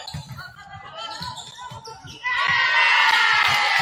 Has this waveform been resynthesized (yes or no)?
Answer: no